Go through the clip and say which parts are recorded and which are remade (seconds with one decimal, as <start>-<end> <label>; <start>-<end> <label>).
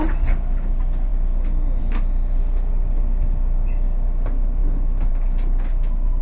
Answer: 0.0-6.2 recorded